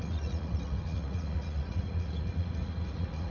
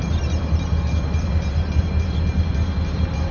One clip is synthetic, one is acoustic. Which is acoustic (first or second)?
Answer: second